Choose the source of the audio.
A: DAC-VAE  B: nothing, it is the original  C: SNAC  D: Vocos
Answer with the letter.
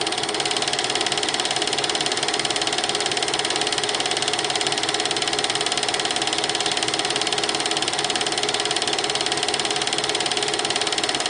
B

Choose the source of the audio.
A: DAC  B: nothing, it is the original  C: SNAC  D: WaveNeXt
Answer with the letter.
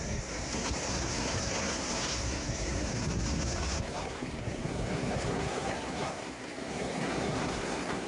C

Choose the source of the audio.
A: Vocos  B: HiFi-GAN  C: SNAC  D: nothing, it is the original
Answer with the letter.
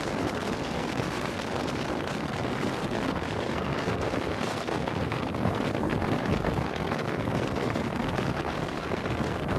C